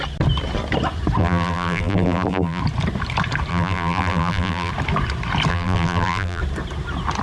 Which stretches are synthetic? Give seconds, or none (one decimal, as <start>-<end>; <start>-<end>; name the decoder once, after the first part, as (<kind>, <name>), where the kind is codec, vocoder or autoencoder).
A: 1.2-2.6 (vocoder, BigVGAN v2); 3.5-4.7; 5.5-6.4